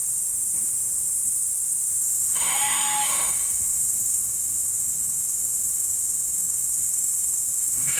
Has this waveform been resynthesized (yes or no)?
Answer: yes